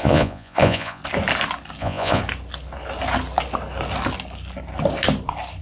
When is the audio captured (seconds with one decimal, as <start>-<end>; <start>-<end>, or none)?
1.0-1.8; 2.2-5.6